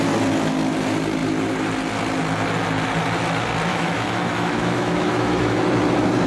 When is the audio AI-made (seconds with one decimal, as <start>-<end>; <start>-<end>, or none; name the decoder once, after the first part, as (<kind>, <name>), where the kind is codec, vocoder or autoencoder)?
3.7-5.6 (autoencoder, DAC-VAE)